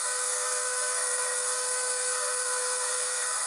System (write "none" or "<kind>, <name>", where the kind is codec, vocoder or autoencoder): codec, SNAC